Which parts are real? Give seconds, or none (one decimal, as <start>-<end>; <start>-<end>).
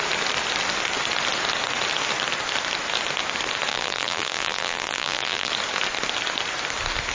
0.0-3.7; 5.5-7.1